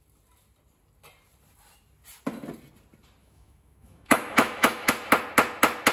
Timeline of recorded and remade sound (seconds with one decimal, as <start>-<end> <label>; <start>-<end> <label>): 0.0-3.2 recorded; 3.2-4.9 remade; 4.9-5.9 recorded